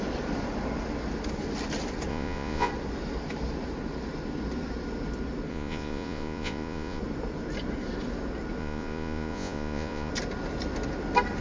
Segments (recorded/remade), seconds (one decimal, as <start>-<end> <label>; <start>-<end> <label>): 0.0-2.1 recorded; 2.1-2.7 remade; 2.7-5.5 recorded; 5.5-7.0 remade; 7.0-8.6 recorded; 8.6-10.1 remade; 10.1-11.4 recorded